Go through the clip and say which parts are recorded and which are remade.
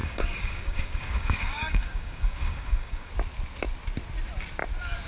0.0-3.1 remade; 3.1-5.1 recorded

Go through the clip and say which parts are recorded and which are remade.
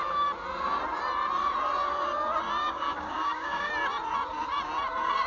0.0-2.6 recorded; 2.6-3.7 remade; 3.7-5.3 recorded